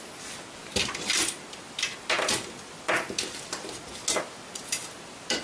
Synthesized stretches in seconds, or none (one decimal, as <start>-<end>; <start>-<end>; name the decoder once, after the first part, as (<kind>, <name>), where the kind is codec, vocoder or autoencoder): 0.6-3.8 (vocoder, BigVGAN v2); 4.8-5.4